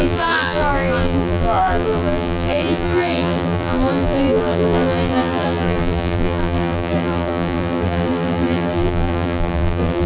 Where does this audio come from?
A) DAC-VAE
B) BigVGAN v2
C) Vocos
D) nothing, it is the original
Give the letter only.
B